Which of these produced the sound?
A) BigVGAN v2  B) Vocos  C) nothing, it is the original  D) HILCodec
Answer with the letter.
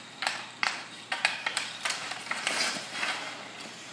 A